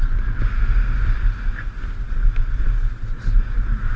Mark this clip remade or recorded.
recorded